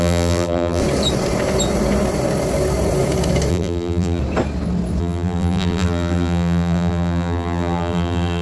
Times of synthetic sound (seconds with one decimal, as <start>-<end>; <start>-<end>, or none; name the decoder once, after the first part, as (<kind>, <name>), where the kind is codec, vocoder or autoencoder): 0.0-0.8 (vocoder, BigVGAN v2); 3.5-4.2; 5.0-8.4